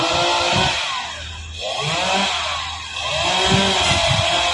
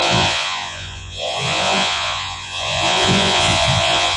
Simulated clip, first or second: second